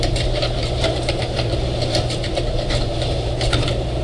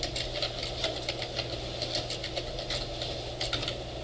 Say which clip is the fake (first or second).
first